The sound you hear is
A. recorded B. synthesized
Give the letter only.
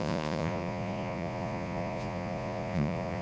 B